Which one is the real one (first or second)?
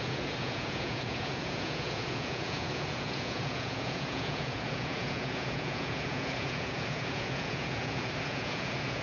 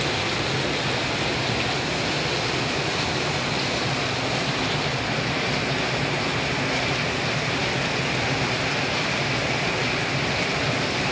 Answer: second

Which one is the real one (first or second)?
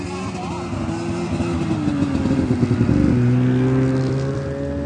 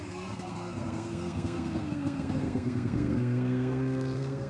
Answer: first